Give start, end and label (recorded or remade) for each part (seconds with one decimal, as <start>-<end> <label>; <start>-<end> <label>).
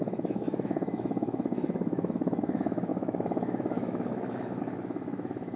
0.0-5.6 remade